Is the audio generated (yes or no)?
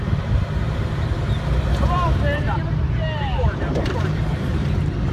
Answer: yes